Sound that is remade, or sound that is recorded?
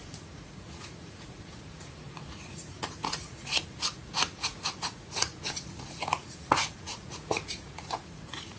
remade